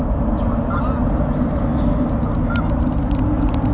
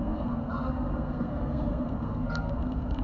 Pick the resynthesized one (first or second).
second